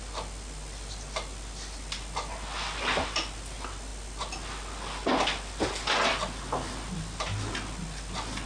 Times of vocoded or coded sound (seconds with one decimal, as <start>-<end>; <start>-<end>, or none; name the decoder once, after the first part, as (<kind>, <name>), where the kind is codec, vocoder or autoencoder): none